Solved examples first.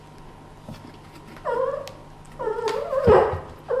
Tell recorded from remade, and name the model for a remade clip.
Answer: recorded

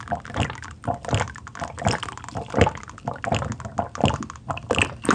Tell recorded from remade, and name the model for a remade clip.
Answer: recorded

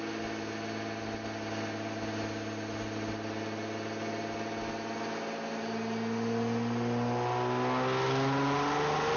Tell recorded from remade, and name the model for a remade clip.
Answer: recorded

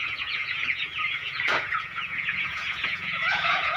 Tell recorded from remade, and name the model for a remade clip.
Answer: remade, vocoder, Vocos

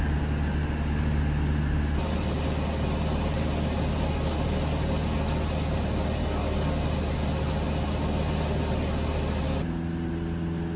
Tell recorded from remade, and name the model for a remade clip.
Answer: recorded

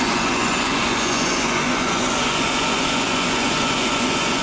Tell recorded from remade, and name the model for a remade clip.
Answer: remade, vocoder, Vocos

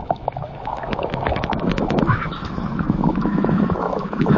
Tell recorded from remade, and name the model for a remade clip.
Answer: remade, autoencoder, DAC-VAE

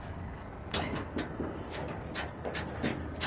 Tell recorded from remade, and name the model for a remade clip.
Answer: recorded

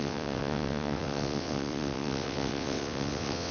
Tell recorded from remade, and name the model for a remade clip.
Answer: remade, vocoder, WaveNeXt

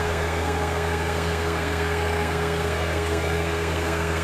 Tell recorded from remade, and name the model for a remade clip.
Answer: remade, codec, SNAC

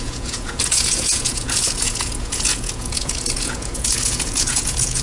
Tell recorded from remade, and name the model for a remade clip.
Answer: remade, vocoder, Vocos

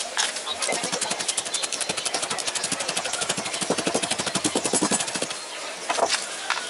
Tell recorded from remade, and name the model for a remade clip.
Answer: recorded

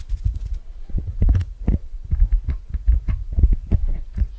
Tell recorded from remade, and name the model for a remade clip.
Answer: remade, vocoder, Vocos